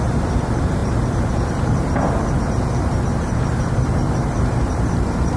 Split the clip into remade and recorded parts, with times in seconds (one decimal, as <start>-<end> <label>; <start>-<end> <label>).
0.0-5.4 remade